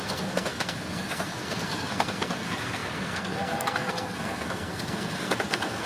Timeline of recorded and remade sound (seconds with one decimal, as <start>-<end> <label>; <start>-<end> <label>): 0.0-5.9 remade